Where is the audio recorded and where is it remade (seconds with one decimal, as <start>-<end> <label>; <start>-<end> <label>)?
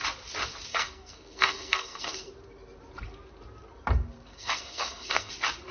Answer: 0.0-0.7 recorded; 0.7-2.3 remade; 2.3-4.3 recorded; 4.3-5.3 remade; 5.3-5.7 recorded